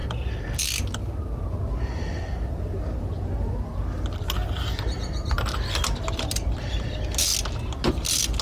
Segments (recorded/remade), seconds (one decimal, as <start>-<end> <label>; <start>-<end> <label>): 0.0-8.4 recorded